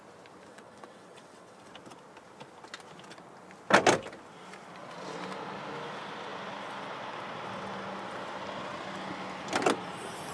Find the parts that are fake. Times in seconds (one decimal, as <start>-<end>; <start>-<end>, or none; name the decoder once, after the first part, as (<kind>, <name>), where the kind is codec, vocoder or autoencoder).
0.5-1.7 (vocoder, WaveNeXt)